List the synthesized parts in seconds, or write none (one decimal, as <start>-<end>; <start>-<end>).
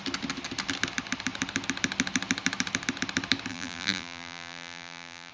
3.5-5.3